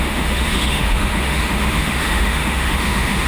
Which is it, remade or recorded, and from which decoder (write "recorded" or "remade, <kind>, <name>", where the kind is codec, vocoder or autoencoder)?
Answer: remade, autoencoder, DAC-VAE